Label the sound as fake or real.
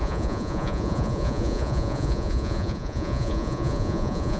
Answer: fake